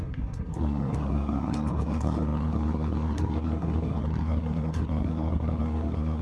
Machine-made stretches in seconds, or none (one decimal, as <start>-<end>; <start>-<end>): 0.0-6.2

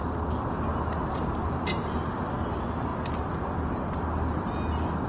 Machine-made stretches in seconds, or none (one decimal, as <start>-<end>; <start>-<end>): none

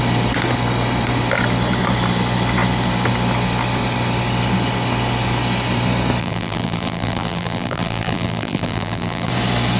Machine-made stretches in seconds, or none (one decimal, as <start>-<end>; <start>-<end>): 6.2-9.3

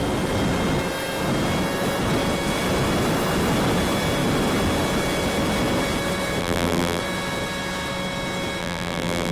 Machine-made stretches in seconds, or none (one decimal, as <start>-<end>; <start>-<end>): 6.4-7.0; 8.6-9.3

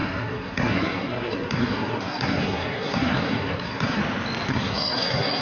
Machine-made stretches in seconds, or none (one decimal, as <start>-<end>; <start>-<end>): 0.0-4.0; 4.5-5.4

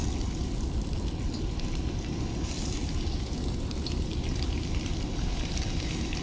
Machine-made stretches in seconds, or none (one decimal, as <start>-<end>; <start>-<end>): 2.8-4.9

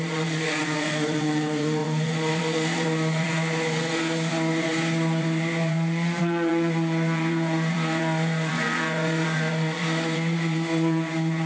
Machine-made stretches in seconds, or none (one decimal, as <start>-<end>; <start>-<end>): 0.0-11.5